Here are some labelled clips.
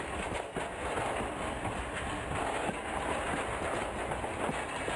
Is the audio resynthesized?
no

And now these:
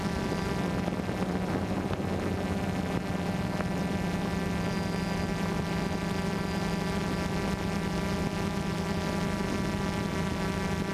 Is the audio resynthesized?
no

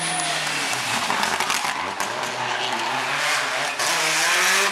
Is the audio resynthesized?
no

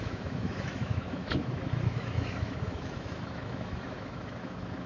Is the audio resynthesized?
yes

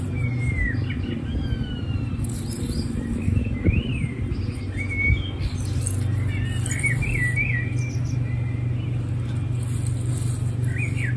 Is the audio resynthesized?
no